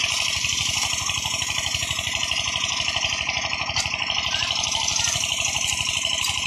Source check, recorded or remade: remade